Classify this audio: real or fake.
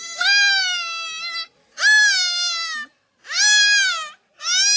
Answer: real